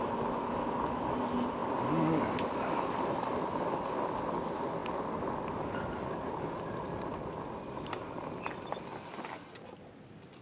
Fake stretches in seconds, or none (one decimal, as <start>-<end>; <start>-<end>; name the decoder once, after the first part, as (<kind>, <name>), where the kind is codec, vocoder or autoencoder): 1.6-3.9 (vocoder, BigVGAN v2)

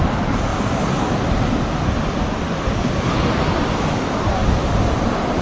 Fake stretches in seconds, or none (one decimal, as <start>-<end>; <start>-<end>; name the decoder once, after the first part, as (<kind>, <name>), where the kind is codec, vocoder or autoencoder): 0.0-0.5 (vocoder, BigVGAN v2); 3.7-5.4

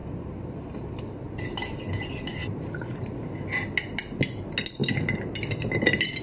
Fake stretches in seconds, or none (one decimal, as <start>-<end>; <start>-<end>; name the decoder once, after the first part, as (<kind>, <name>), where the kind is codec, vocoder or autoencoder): 0.0-1.0 (vocoder, BigVGAN v2); 2.4-3.3

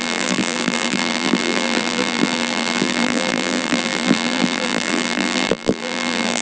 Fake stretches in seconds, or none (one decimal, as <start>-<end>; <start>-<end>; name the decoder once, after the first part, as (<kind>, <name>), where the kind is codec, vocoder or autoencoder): 0.0-6.4 (vocoder, BigVGAN v2)